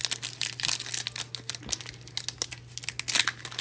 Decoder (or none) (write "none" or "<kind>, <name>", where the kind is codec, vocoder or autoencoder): none